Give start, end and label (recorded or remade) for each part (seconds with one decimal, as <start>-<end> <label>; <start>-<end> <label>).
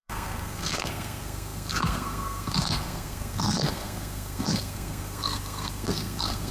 0.0-6.5 remade